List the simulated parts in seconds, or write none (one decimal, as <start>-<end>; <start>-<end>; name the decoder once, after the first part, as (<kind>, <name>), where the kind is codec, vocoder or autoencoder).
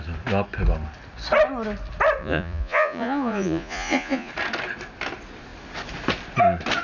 2.2-4.3 (vocoder, Vocos)